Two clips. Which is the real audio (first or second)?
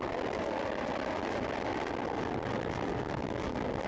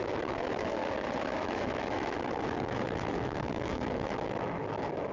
first